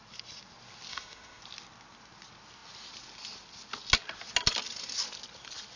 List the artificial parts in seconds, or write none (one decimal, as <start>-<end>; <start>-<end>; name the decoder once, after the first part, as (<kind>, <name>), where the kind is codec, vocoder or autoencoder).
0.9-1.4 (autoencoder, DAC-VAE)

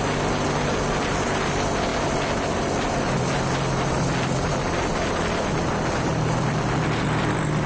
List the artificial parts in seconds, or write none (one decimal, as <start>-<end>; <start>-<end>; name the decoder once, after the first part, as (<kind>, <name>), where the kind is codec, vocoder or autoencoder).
none

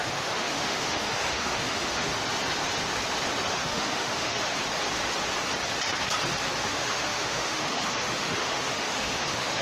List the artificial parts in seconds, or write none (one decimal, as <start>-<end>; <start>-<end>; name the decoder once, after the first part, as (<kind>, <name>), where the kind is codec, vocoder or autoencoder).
0.0-2.1 (autoencoder, DAC-VAE); 3.5-4.6; 6.6-9.6

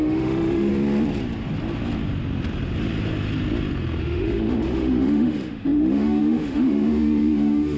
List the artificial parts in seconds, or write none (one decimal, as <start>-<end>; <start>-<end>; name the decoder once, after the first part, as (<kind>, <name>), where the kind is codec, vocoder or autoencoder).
0.0-0.7 (autoencoder, DAC-VAE); 4.0-7.8

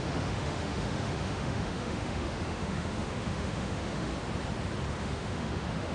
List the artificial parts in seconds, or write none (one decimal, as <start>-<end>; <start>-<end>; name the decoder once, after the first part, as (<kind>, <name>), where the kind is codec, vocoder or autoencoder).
0.0-4.1 (autoencoder, DAC-VAE); 5.0-5.9

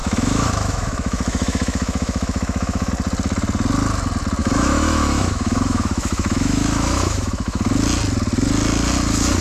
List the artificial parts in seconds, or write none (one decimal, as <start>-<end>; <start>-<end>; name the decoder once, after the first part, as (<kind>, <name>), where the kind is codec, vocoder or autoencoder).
0.0-2.9 (autoencoder, DAC-VAE); 4.4-7.6